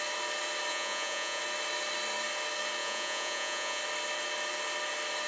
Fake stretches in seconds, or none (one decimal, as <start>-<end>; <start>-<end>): 0.7-1.4; 2.8-3.8